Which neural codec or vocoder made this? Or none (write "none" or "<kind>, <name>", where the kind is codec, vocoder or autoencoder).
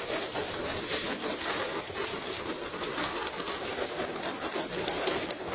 none